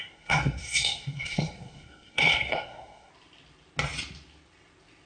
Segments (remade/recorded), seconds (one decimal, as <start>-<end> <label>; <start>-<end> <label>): 0.0-3.1 remade; 3.1-5.1 recorded